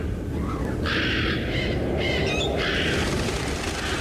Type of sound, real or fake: real